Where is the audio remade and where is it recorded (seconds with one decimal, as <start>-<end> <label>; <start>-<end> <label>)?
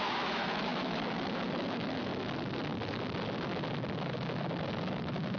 0.0-2.1 remade; 2.1-5.4 recorded